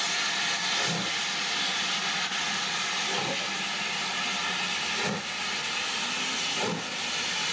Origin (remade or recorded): recorded